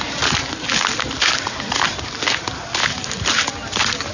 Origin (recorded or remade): recorded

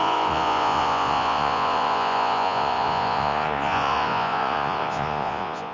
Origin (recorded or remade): remade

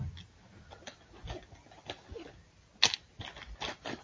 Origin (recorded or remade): recorded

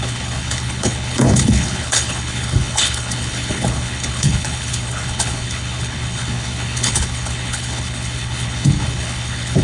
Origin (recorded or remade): remade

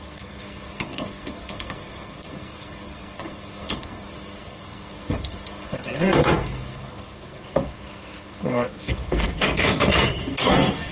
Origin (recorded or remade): remade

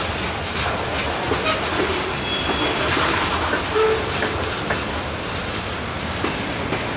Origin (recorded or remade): recorded